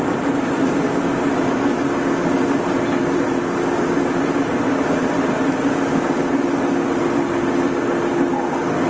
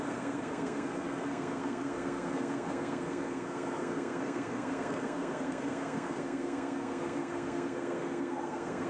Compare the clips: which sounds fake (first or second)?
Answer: second